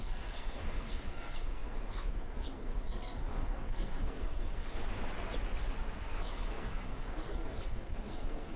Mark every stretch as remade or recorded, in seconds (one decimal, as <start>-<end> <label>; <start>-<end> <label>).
0.0-4.8 remade; 4.8-6.0 recorded; 6.0-8.6 remade